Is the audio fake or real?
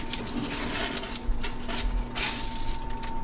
real